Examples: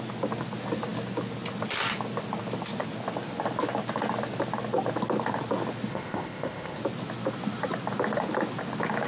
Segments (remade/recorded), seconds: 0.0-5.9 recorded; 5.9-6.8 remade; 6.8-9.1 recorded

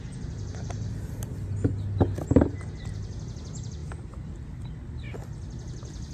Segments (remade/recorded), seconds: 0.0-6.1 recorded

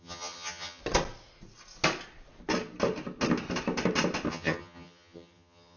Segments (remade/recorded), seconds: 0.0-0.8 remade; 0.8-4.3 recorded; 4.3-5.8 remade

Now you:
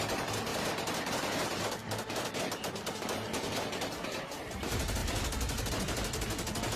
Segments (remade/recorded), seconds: 0.0-5.0 recorded; 5.0-5.7 remade; 5.7-6.8 recorded

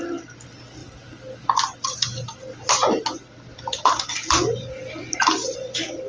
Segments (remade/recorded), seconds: 0.0-6.1 recorded

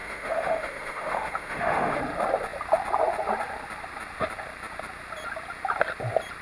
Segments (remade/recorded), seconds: 0.0-2.0 remade; 2.0-6.4 recorded

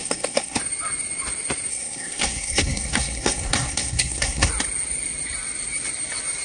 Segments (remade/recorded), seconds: 0.0-0.6 remade; 0.6-1.7 recorded; 1.7-4.5 remade; 4.5-6.4 recorded

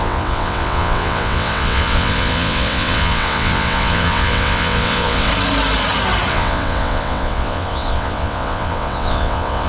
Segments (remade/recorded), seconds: 0.0-5.3 remade; 5.3-6.3 recorded; 6.3-9.7 remade